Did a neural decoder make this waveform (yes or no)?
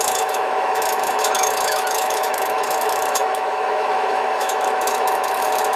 yes